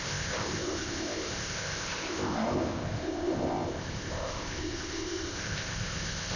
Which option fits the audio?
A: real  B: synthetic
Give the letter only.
B